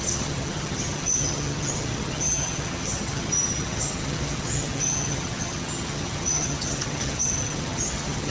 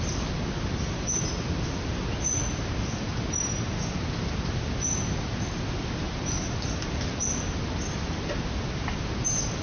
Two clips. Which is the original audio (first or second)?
second